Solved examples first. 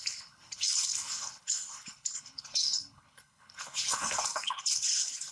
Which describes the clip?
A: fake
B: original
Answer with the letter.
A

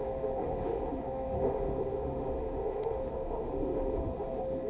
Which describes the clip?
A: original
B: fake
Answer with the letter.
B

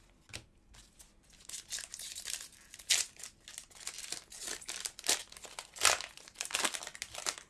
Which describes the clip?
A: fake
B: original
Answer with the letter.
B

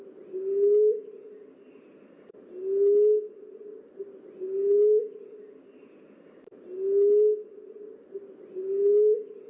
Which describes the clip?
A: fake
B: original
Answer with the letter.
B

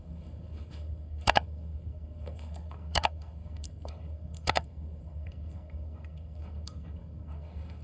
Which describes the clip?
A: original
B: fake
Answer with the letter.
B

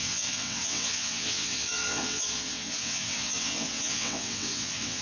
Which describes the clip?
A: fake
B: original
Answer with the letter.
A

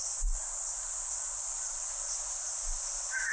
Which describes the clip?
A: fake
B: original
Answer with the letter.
B